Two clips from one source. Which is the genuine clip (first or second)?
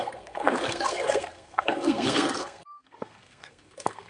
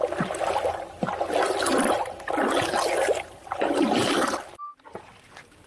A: second